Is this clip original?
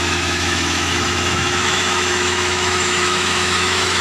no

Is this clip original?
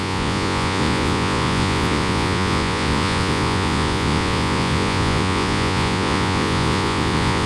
no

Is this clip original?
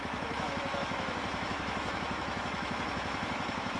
no